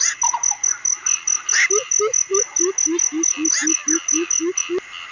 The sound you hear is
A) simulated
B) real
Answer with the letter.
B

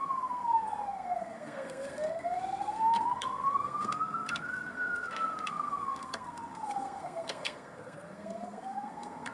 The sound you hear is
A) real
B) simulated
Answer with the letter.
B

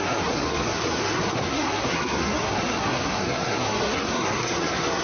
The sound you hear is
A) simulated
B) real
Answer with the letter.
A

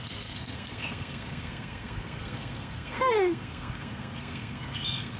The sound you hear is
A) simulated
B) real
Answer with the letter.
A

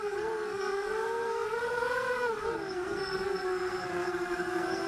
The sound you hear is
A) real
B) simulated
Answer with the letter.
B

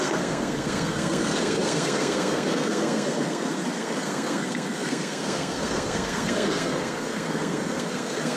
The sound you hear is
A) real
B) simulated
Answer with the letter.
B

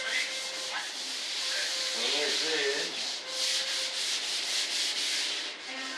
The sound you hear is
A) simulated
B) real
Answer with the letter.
B